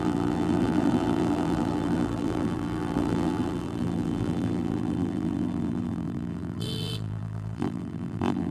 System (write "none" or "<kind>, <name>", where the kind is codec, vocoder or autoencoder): vocoder, BigVGAN v2